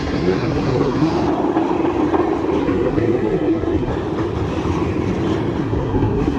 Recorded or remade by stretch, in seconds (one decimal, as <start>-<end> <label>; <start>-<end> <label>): 0.0-1.1 remade; 1.1-2.6 recorded; 2.6-3.9 remade; 3.9-5.6 recorded; 5.6-6.4 remade